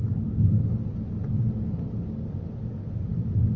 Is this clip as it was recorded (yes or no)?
yes